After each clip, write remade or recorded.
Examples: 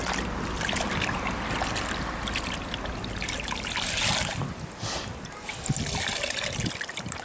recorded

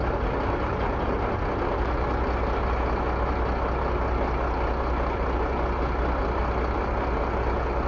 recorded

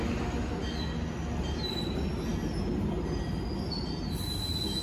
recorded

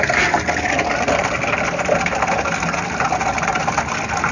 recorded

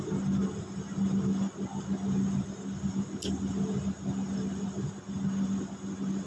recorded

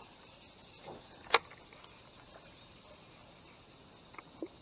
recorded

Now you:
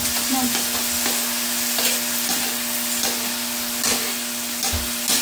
recorded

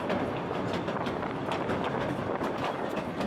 recorded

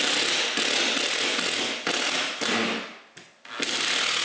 recorded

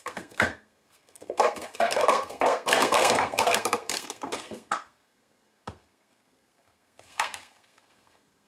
remade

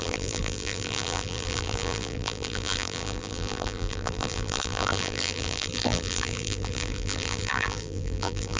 remade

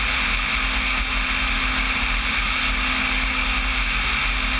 recorded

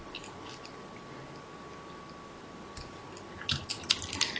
recorded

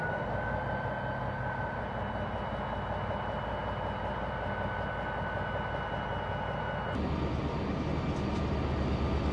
recorded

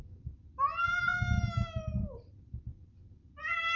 recorded